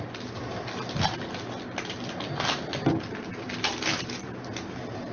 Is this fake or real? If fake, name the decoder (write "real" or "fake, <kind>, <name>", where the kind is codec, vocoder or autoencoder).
real